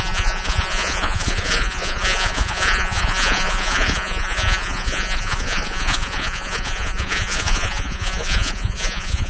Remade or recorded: remade